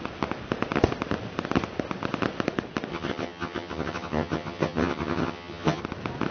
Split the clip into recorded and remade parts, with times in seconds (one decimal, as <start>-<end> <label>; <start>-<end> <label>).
0.0-2.9 recorded; 2.9-5.8 remade; 5.8-6.3 recorded